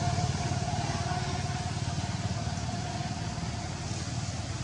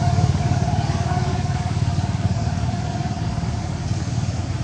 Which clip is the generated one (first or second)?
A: second